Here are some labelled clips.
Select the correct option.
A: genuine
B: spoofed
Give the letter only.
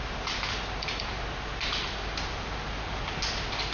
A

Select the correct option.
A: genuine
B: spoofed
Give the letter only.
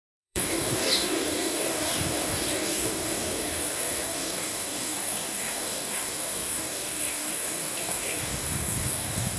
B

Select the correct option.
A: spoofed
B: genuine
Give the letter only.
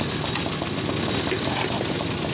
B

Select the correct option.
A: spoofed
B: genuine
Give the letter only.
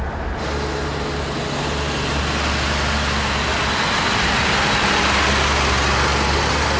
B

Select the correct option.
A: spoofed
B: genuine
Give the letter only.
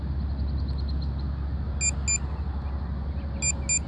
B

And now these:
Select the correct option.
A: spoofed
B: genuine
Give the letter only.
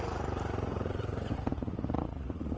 A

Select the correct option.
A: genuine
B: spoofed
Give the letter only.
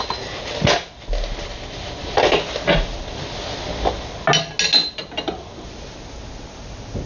A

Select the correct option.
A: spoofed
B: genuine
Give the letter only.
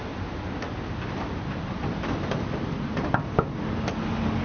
B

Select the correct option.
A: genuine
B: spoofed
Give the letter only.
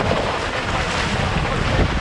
A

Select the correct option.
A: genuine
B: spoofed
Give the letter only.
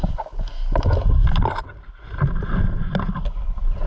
A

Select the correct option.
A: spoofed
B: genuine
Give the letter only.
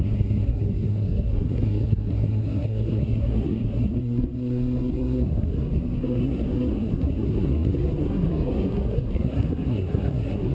A